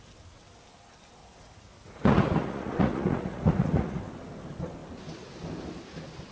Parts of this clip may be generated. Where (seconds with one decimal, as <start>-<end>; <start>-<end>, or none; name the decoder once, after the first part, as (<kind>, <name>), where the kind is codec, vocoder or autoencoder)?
1.2-4.0 (vocoder, Vocos)